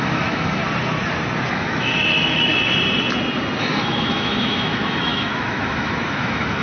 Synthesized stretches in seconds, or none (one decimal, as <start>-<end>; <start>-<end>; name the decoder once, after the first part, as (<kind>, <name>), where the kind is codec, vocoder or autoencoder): 0.0-0.6 (autoencoder, DAC-VAE); 1.5-2.5; 3.6-6.6